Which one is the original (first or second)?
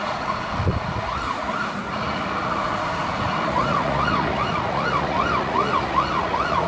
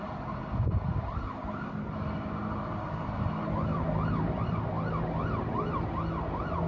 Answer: second